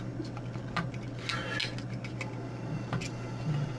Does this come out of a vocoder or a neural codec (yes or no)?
no